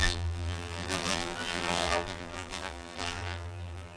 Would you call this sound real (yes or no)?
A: no